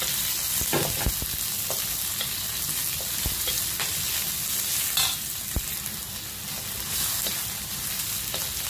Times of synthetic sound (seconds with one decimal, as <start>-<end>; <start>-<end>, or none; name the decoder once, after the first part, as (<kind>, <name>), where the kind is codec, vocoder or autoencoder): none